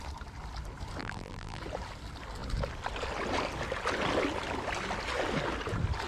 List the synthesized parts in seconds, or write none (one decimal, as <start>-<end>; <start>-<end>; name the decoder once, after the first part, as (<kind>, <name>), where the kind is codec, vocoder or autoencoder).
1.0-1.6 (vocoder, BigVGAN v2)